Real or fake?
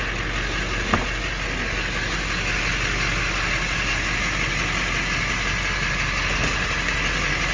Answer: real